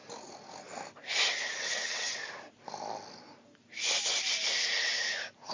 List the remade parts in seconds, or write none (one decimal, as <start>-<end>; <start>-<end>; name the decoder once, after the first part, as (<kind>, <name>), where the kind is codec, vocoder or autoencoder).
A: 1.6-2.2 (vocoder, WaveNeXt)